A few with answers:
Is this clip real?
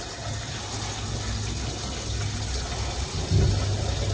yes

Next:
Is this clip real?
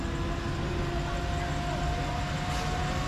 yes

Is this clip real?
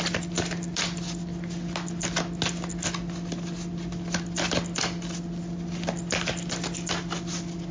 yes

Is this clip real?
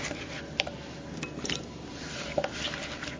yes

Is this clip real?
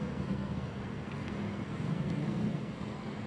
no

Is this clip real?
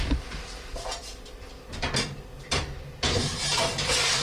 no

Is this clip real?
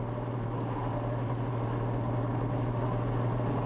yes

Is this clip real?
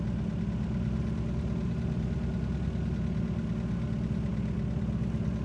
yes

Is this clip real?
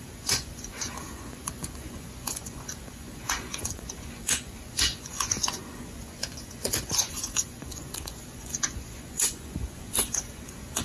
no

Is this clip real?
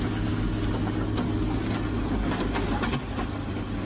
yes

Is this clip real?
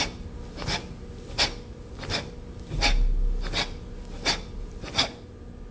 yes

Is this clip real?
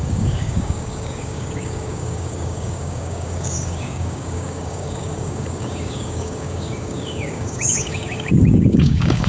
no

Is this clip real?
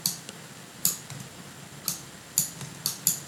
yes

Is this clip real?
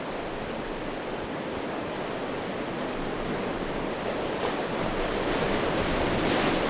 yes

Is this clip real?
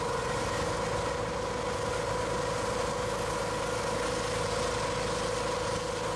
yes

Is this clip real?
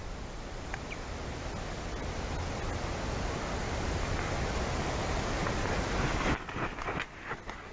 yes